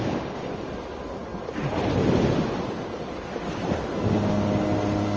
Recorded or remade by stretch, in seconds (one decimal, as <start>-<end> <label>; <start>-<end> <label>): 0.0-0.6 remade; 0.6-5.2 recorded